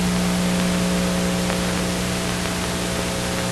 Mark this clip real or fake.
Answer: real